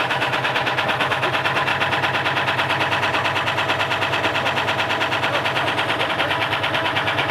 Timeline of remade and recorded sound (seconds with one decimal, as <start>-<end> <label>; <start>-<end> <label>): 0.0-1.7 remade; 1.7-6.1 recorded; 6.1-7.3 remade